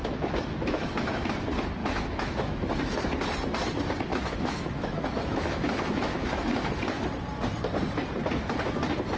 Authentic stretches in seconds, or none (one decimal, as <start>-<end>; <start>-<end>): 1.2-1.8; 2.7-4.1; 6.6-9.2